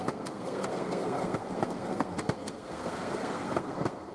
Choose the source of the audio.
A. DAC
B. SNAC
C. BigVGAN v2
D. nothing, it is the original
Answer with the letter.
B